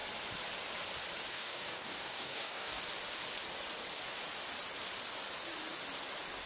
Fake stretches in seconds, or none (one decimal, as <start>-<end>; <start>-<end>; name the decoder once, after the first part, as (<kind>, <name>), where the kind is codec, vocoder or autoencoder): 1.3-2.8 (codec, DAC)